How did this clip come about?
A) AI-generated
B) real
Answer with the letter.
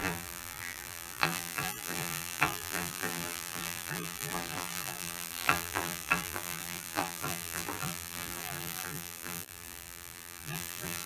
A